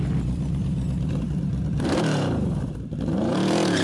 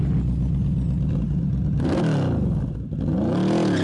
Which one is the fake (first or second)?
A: first